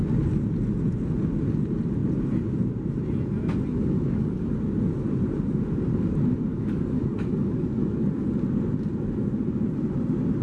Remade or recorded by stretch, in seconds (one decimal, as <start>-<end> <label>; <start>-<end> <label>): 0.0-3.7 recorded; 3.7-4.5 remade; 4.5-6.5 recorded; 6.5-8.1 remade; 8.1-10.4 recorded